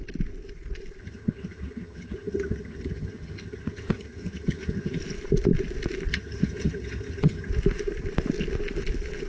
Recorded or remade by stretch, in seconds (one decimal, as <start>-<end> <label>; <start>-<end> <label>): 0.0-1.0 recorded; 1.0-5.0 remade; 5.0-6.1 recorded; 6.1-7.5 remade; 7.5-9.3 recorded